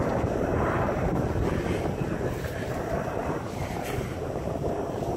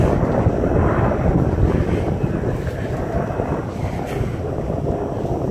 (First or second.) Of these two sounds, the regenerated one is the first